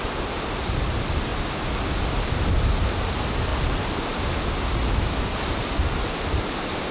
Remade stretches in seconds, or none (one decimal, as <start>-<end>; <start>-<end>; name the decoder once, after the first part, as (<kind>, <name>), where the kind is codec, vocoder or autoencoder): none